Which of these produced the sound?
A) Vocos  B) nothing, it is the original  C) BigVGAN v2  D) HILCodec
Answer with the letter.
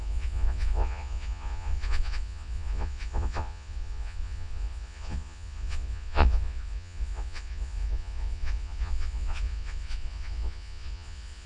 A